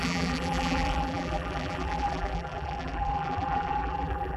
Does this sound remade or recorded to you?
remade